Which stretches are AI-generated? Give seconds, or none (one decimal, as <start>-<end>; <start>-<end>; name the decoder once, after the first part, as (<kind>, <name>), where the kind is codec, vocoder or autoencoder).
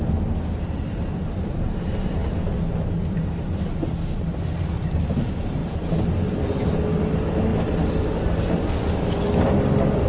5.6-6.1 (vocoder, BigVGAN v2)